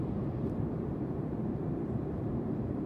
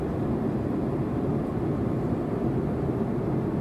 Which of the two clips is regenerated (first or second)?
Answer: first